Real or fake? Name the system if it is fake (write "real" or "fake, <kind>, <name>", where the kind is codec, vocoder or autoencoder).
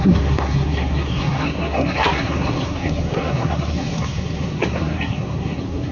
fake, codec, SNAC